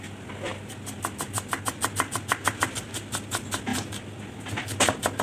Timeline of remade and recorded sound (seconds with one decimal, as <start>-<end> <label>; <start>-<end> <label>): 0.0-5.2 recorded